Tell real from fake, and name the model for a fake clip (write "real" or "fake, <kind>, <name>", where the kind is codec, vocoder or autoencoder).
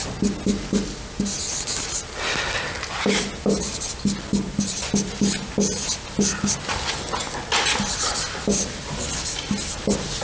real